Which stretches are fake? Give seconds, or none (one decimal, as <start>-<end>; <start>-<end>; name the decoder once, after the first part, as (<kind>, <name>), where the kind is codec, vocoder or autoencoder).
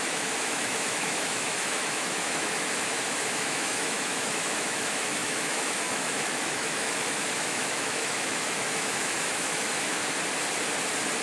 0.0-10.0 (autoencoder, DAC-VAE)